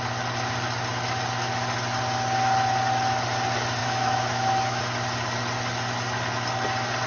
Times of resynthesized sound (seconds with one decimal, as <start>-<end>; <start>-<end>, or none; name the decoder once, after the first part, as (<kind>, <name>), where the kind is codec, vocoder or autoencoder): 3.8-4.8 (autoencoder, DAC-VAE)